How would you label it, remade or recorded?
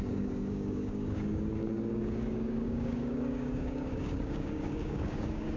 remade